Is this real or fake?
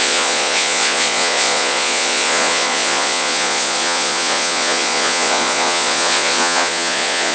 fake